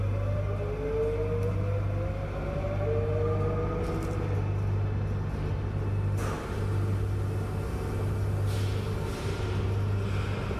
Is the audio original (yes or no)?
yes